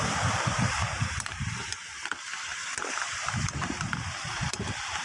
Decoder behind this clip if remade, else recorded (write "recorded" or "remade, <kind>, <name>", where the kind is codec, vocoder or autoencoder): remade, vocoder, BigVGAN v2